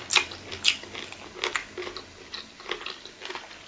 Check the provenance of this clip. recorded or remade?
recorded